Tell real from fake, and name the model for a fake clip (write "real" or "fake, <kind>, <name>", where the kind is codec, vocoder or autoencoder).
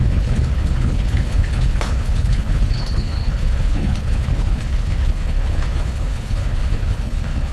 fake, codec, HILCodec